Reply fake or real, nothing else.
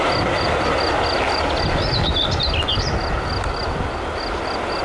real